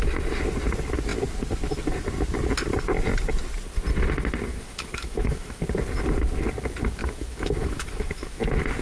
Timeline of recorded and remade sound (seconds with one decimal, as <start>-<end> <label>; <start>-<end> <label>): 0.0-4.5 recorded; 4.5-5.6 remade; 5.6-7.0 recorded; 7.0-8.4 remade; 8.4-8.8 recorded